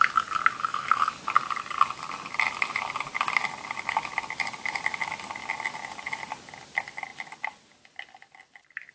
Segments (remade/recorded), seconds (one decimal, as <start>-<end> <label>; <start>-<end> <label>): 0.0-0.6 recorded; 0.6-1.1 remade; 1.1-8.9 recorded